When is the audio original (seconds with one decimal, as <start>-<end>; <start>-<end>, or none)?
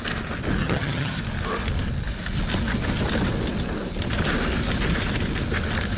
0.0-0.6; 1.2-6.0